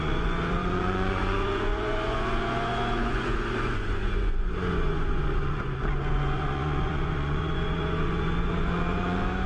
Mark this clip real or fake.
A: fake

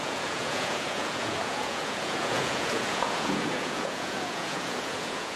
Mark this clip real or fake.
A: fake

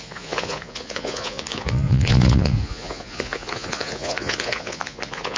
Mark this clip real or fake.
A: fake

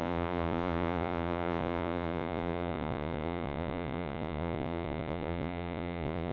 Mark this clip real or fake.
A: fake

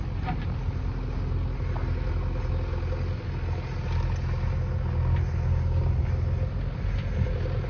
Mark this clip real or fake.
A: real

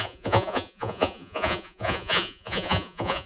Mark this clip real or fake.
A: fake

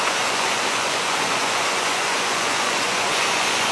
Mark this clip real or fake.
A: fake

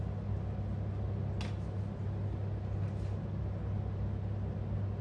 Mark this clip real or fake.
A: real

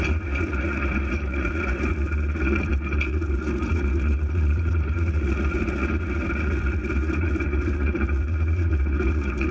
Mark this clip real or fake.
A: fake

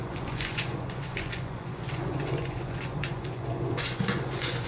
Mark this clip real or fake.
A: fake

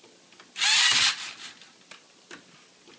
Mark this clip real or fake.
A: real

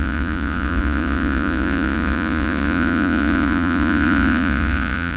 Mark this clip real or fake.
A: fake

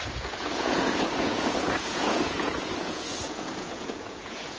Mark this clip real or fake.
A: fake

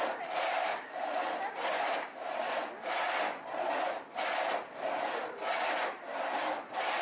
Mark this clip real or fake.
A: real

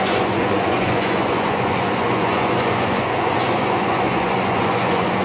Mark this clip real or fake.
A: fake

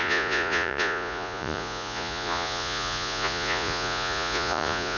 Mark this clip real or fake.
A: fake